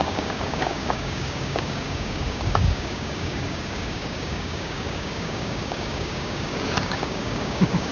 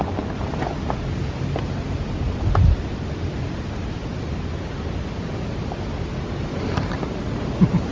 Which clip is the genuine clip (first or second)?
second